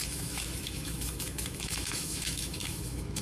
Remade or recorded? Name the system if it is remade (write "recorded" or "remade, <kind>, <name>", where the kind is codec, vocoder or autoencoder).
remade, autoencoder, DAC-VAE